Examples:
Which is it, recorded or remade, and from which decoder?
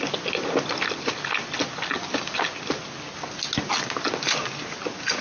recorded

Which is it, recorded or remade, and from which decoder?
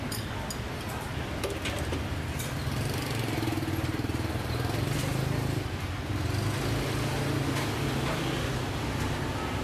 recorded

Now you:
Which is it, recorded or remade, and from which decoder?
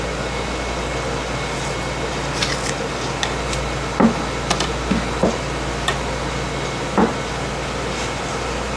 recorded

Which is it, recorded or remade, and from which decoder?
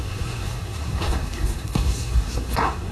remade, codec, SNAC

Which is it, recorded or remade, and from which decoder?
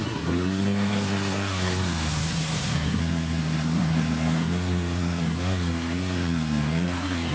remade, codec, SNAC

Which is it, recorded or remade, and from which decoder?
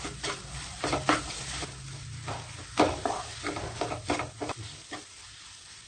recorded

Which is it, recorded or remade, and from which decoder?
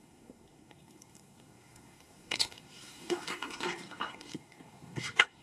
remade, codec, SNAC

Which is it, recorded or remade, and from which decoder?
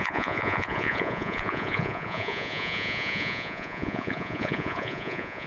remade, vocoder, Vocos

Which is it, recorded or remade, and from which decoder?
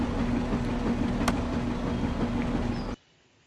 recorded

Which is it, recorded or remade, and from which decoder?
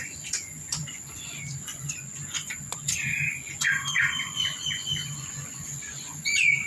remade, vocoder, Vocos